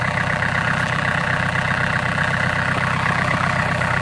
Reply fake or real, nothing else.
fake